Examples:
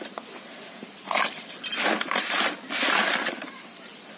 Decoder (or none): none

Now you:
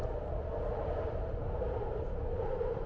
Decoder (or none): none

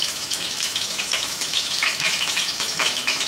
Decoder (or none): autoencoder, DAC-VAE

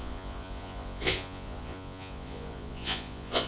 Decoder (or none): vocoder, Vocos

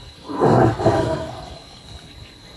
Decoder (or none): codec, SNAC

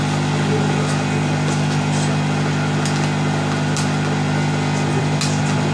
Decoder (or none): none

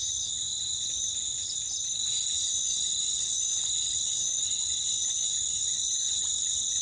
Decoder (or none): none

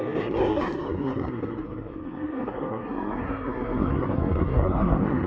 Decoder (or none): codec, SNAC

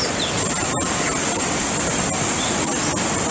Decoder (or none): none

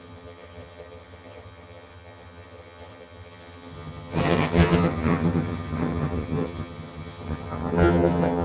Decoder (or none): vocoder, HiFi-GAN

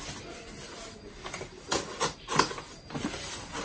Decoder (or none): none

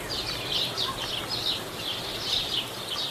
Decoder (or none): none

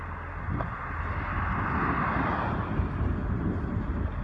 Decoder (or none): none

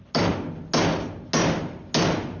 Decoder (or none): none